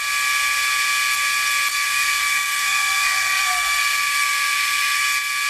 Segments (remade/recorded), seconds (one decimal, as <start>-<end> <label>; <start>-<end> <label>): 0.0-1.7 recorded; 1.7-5.0 remade; 5.0-5.5 recorded